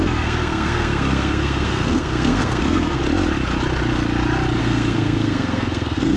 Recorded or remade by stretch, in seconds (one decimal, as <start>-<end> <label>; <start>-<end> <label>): 0.0-3.0 remade; 3.0-4.6 recorded; 4.6-6.2 remade